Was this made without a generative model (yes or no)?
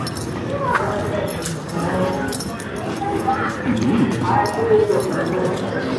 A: yes